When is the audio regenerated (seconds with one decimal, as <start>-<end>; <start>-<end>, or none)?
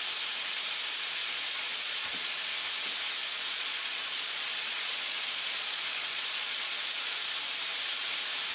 1.2-2.4; 3.2-7.3